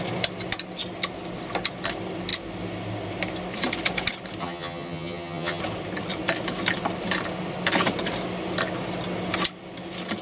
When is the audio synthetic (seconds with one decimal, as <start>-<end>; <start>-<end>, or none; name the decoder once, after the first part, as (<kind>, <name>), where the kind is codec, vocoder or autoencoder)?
4.4-5.6 (vocoder, HiFi-GAN)